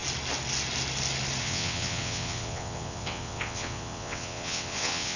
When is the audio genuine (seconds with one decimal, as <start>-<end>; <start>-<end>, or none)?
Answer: 0.0-1.4